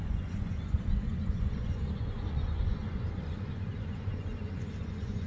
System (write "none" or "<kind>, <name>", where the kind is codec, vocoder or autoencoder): vocoder, Vocos